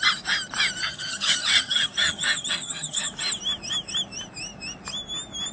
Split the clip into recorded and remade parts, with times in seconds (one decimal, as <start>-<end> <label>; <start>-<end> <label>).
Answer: 0.0-0.8 recorded; 0.8-3.1 remade; 3.1-5.5 recorded